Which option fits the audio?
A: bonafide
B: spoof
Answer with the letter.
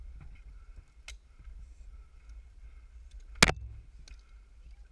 A